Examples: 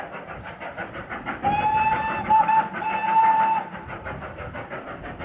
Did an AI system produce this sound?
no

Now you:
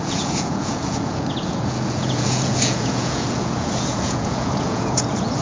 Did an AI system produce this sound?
yes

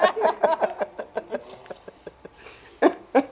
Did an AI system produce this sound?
no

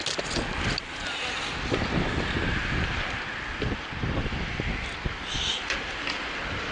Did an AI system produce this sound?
no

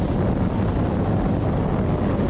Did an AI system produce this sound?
no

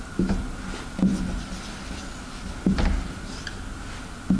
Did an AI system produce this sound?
no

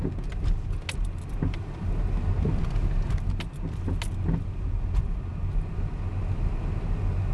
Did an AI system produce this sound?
no